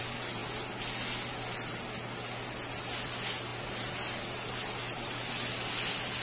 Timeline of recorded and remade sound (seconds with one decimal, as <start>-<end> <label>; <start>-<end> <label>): 0.0-6.2 recorded